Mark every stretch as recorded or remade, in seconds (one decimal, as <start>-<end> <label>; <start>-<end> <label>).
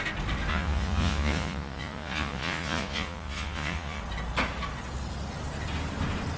0.0-0.5 recorded; 0.5-4.0 remade; 4.0-6.4 recorded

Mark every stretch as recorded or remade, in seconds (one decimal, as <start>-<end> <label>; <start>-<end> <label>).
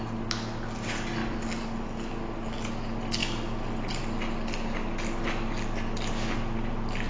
0.0-7.1 recorded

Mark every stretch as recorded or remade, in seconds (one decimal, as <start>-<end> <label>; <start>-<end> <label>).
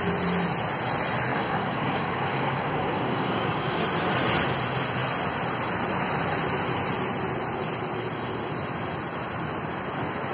0.0-1.3 recorded; 1.3-3.8 remade; 3.8-10.3 recorded